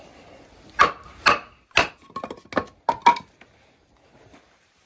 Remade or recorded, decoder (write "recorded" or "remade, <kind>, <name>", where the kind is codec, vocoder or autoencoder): recorded